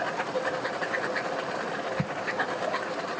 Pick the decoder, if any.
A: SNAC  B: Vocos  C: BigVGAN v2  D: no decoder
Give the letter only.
D